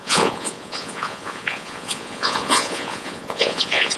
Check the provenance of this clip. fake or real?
fake